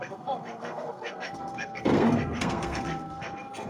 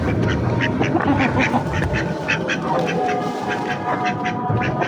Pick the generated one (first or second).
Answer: first